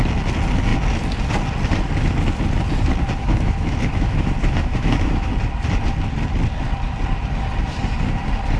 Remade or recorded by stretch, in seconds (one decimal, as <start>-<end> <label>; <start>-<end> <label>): 0.0-3.2 recorded; 3.2-5.3 remade; 5.3-8.6 recorded